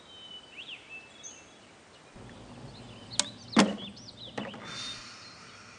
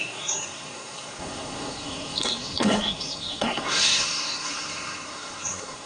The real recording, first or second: first